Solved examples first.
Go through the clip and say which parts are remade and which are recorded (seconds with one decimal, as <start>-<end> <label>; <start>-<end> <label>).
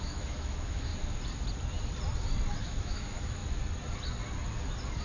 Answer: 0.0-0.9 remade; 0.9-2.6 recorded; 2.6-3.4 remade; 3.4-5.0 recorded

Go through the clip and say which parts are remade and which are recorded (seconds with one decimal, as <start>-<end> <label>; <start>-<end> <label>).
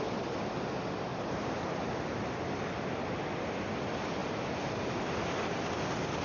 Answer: 0.0-1.1 recorded; 1.1-2.8 remade; 2.8-6.2 recorded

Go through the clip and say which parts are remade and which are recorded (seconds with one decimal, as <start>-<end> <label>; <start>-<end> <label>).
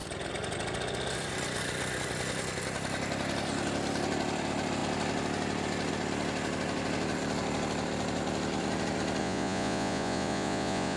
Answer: 0.0-9.2 recorded; 9.2-11.0 remade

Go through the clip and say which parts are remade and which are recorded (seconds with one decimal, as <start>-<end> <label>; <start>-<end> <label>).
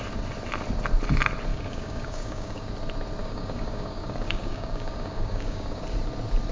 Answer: 0.0-1.5 recorded; 1.5-2.7 remade; 2.7-3.2 recorded; 3.2-5.8 remade; 5.8-6.5 recorded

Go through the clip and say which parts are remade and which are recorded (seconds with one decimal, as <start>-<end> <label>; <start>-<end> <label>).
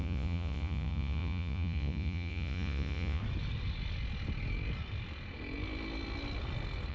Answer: 0.0-3.2 remade; 3.2-6.9 recorded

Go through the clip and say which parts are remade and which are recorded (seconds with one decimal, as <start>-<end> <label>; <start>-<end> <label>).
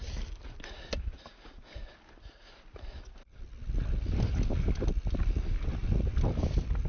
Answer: 0.0-6.9 recorded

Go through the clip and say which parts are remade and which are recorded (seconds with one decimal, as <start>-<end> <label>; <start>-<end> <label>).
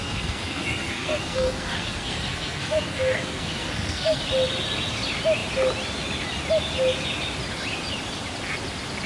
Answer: 0.0-4.2 remade; 4.2-9.1 recorded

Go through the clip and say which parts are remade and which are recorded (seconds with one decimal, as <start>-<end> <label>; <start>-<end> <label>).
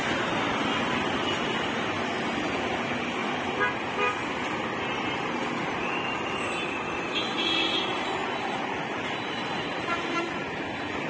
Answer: 0.0-11.1 recorded